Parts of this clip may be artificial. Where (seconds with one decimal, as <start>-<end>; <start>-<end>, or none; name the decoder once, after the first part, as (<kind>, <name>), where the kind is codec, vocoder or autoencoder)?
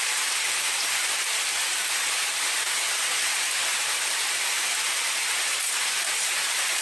0.0-6.8 (vocoder, BigVGAN v2)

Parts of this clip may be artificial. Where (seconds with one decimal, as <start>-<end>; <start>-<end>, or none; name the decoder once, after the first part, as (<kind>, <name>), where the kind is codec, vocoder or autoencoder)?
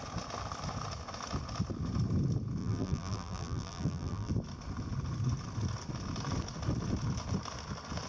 2.6-4.3 (vocoder, BigVGAN v2)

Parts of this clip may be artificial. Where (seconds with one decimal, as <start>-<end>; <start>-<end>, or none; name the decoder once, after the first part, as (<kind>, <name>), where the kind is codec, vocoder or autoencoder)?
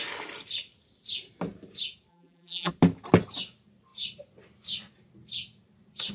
2.1-2.7 (vocoder, BigVGAN v2)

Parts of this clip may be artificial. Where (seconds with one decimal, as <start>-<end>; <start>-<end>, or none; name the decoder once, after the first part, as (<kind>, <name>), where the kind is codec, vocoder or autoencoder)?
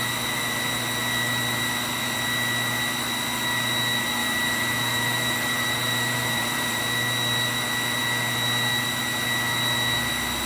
4.2-6.8 (vocoder, BigVGAN v2)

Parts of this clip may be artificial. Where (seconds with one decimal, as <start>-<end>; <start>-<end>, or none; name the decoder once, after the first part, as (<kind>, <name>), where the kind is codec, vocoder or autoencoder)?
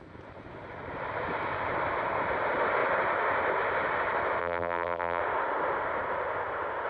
4.4-5.2 (vocoder, BigVGAN v2)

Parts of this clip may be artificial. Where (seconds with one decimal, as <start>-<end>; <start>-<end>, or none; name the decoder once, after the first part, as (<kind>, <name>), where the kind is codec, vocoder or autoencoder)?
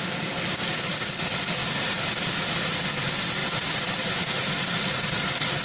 1.6-2.8 (vocoder, BigVGAN v2); 3.4-5.6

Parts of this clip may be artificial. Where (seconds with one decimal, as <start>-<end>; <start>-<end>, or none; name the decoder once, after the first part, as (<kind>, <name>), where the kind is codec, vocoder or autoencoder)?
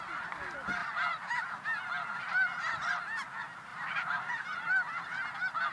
0.8-1.4 (vocoder, BigVGAN v2); 3.7-4.3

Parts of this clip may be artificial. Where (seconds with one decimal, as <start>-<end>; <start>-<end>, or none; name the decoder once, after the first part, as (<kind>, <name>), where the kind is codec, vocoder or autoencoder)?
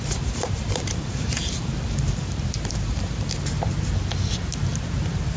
0.0-3.2 (vocoder, BigVGAN v2)